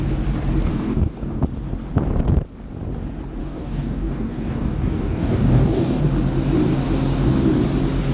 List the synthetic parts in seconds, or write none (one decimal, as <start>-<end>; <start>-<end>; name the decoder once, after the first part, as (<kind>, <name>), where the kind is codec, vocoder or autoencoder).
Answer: 0.7-1.4 (codec, DAC); 3.4-6.0